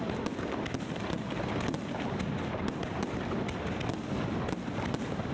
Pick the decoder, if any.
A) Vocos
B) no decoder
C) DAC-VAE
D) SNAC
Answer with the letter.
B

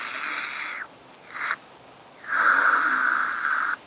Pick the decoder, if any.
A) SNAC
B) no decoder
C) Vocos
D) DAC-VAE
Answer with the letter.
B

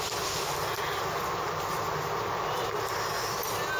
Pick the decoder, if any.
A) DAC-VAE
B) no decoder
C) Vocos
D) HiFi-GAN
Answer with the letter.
B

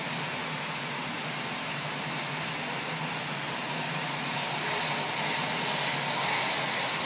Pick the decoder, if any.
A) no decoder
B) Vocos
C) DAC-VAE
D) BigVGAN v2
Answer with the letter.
A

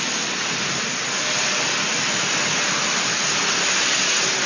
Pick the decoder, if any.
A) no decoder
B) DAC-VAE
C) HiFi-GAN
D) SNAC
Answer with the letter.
A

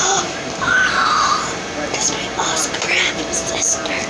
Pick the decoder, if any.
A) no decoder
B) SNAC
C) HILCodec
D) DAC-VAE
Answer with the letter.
A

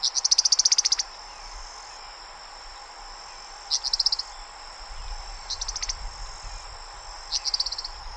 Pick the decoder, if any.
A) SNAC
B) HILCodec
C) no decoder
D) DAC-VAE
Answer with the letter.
C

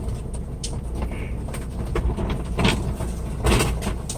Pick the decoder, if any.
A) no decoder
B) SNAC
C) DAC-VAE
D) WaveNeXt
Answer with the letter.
A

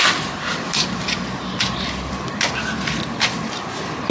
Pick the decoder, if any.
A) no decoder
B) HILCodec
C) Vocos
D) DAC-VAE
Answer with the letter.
A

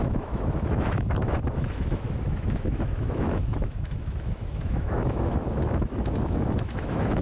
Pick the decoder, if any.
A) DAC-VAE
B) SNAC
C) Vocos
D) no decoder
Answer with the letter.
A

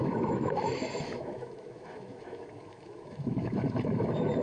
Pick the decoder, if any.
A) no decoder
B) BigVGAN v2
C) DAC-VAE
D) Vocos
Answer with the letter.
C